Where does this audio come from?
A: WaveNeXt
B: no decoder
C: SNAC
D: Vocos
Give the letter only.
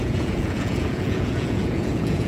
D